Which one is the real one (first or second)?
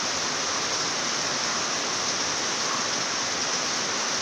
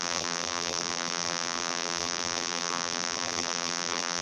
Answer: first